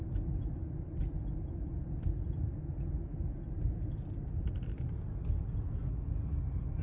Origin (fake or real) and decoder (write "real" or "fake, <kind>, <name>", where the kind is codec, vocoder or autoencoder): real